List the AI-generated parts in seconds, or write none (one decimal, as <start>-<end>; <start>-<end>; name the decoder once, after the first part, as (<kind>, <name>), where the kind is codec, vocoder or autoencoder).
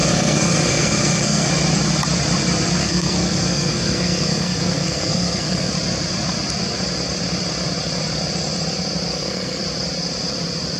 0.0-1.5 (codec, SNAC); 2.8-5.7; 9.1-9.6